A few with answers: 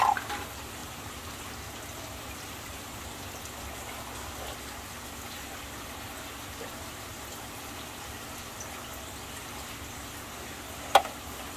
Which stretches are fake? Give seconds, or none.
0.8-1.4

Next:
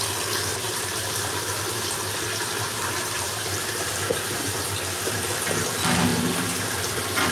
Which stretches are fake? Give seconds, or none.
0.5-4.7; 6.1-6.7

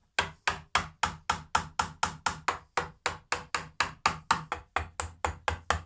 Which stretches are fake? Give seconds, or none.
none

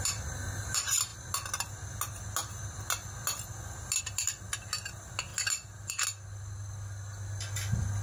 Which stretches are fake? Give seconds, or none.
none

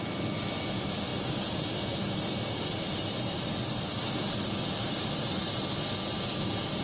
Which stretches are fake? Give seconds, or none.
none

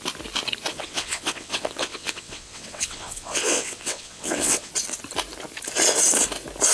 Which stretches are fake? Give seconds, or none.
0.7-4.7